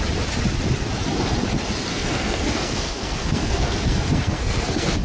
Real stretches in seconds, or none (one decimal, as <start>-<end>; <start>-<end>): 0.0-1.9